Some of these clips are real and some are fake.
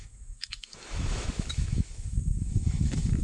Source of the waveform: fake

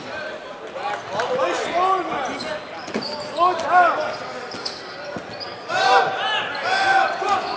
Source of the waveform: real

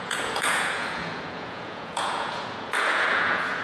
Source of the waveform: fake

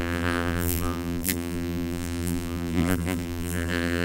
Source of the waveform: fake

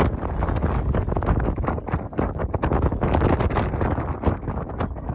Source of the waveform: real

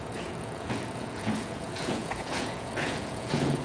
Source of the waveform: fake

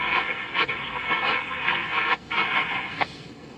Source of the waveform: fake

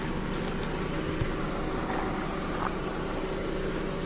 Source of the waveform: real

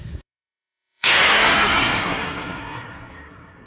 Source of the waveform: fake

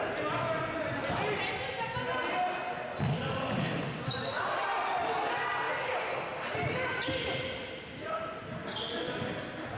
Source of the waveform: real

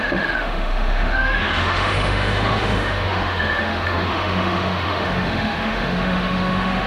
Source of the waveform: fake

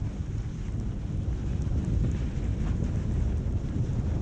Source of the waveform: real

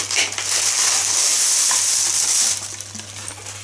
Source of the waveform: real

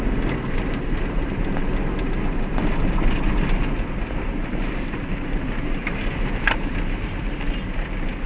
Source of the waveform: real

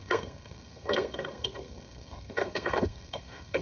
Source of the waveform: fake